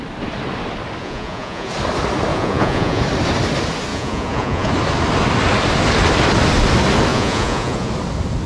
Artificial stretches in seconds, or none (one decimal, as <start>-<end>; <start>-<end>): 1.0-1.7; 2.3-3.0; 3.9-4.7; 7.1-7.9